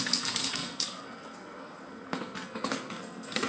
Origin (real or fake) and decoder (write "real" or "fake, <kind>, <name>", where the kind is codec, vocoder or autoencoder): fake, codec, SNAC